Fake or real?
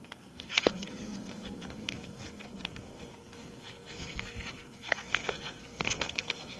fake